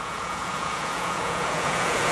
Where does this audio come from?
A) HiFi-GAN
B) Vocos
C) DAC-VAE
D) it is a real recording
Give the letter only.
B